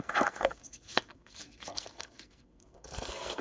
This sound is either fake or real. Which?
fake